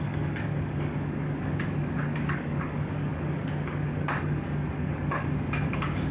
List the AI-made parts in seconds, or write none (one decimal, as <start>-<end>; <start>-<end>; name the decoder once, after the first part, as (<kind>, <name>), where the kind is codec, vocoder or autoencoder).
0.0-6.1 (codec, DAC)

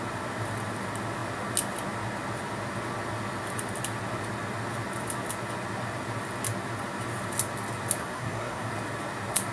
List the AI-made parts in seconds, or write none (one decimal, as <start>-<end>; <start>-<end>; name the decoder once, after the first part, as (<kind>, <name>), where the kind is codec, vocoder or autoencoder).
8.0-8.7 (codec, SNAC)

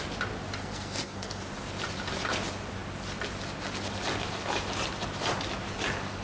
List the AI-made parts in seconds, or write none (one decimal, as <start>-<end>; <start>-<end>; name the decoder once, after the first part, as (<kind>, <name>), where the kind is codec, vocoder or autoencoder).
0.6-1.4 (codec, SNAC)